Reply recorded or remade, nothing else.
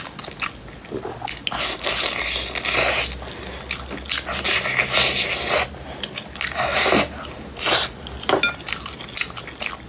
recorded